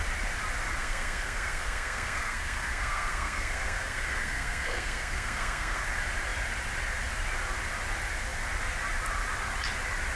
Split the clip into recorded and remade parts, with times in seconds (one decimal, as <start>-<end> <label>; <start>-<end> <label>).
0.0-0.8 recorded; 0.8-5.8 remade; 5.8-10.2 recorded